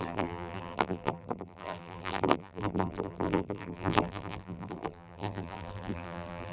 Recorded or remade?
remade